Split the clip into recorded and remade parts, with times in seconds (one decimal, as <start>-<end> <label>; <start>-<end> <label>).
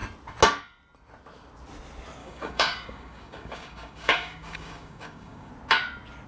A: 0.0-2.2 recorded; 2.2-5.5 remade; 5.5-6.3 recorded